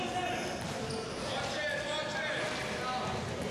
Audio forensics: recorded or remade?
recorded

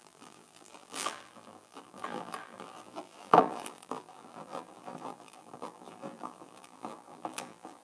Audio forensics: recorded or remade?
remade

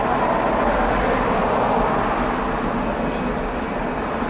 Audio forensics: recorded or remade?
recorded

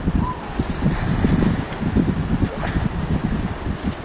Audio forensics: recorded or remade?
remade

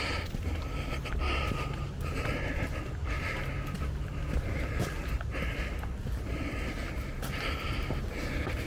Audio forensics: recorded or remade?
recorded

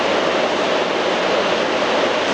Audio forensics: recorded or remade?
recorded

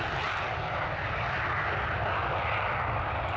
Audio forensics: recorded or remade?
recorded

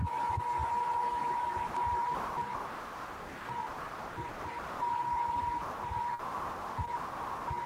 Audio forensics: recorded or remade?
remade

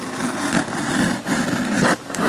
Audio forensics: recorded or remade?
recorded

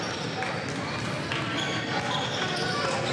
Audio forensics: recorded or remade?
recorded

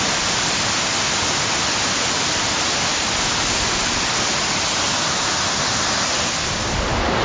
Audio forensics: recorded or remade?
recorded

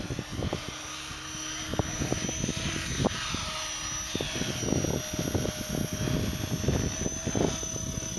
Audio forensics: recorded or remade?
recorded